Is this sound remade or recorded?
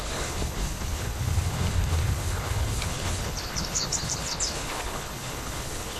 remade